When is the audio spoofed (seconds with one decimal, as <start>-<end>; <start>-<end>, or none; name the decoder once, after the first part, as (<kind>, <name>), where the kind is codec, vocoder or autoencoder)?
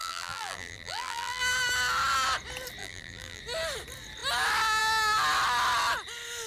0.0-1.4 (vocoder, BigVGAN v2); 2.8-3.4